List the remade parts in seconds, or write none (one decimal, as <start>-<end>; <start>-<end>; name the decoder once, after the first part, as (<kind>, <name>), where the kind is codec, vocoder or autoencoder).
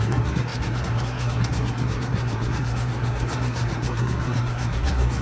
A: 0.0-5.2 (codec, SNAC)